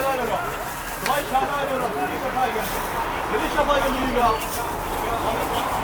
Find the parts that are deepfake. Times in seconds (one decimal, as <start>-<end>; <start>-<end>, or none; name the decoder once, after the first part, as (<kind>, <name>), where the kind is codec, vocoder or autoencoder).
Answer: 0.0-5.8 (vocoder, BigVGAN v2)